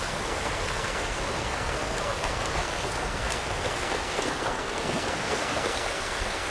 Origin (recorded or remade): remade